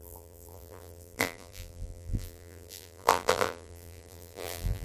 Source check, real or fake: fake